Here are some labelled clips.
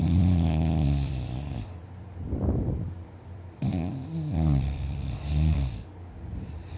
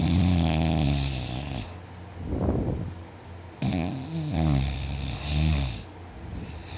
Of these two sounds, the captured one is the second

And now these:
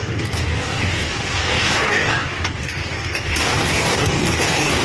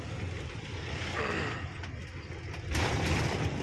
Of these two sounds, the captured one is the second